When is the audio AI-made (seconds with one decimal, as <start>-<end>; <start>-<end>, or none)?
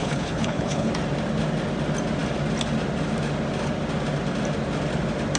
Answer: 0.0-0.9